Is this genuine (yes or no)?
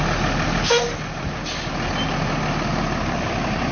yes